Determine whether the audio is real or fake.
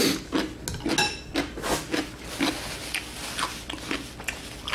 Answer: real